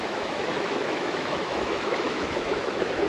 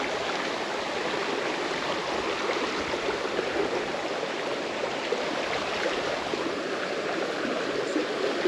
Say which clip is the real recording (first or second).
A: second